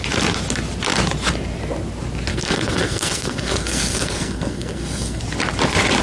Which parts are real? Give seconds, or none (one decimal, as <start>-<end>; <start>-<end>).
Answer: 0.0-2.3; 5.2-6.0